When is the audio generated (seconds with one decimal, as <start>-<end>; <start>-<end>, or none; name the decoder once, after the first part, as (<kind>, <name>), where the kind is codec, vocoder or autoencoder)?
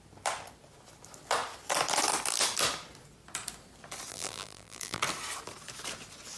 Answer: 4.1-5.0 (vocoder, BigVGAN v2)